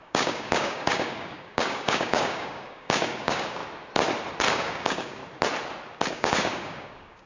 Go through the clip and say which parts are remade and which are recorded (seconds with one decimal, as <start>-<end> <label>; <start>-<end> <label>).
0.0-3.6 remade; 3.6-4.5 recorded; 4.5-5.2 remade; 5.2-6.1 recorded; 6.1-7.3 remade